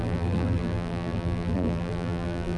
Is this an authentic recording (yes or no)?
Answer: no